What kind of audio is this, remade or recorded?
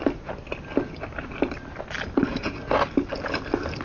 recorded